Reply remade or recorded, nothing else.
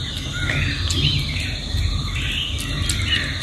recorded